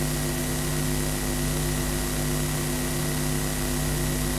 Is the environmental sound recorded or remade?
recorded